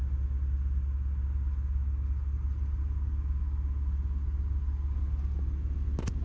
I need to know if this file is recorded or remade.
recorded